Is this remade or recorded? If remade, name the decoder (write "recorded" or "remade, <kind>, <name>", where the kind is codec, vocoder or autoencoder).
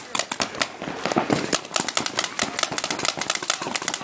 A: recorded